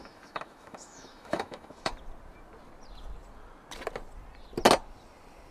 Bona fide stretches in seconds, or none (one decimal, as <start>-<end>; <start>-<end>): 1.9-5.5